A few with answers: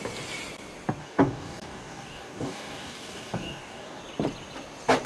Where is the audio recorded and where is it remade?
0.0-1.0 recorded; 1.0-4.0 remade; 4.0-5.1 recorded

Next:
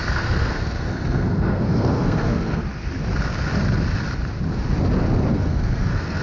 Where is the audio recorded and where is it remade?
0.0-2.6 remade; 2.6-5.3 recorded; 5.3-6.2 remade

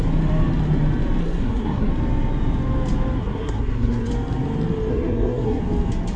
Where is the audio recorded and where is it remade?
0.0-1.2 recorded; 1.2-1.9 remade; 1.9-3.2 recorded; 3.2-4.1 remade; 4.1-4.9 recorded; 4.9-5.6 remade; 5.6-6.2 recorded

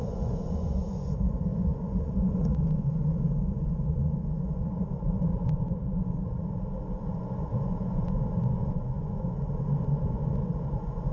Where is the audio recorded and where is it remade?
0.0-5.8 remade; 5.8-6.7 recorded; 6.7-11.1 remade

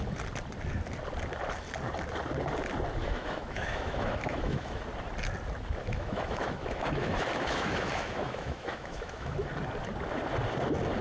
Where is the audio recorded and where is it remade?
0.0-3.0 recorded; 3.0-4.8 remade; 4.8-5.8 recorded; 5.8-9.5 remade; 9.5-11.0 recorded

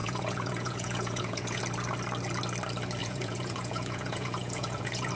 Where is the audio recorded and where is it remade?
0.0-1.6 remade; 1.6-3.0 recorded; 3.0-5.1 remade